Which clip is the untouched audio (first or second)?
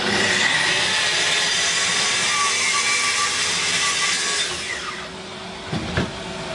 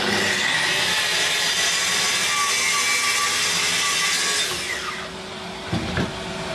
second